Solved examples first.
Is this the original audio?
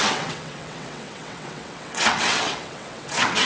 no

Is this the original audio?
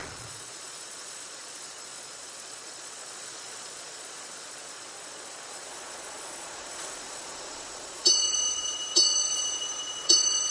no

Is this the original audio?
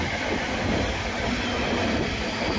yes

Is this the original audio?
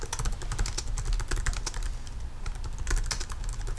yes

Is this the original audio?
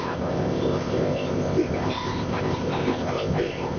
no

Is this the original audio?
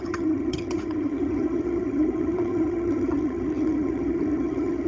no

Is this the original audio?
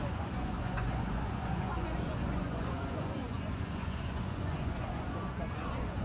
no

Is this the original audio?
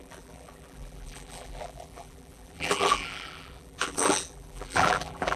no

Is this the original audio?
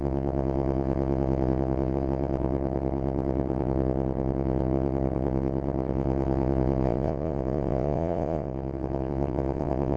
no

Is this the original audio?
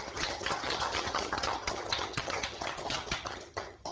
no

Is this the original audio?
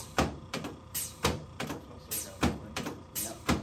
no